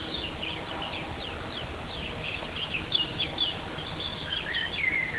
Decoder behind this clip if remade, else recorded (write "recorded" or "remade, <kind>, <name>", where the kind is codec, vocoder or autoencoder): recorded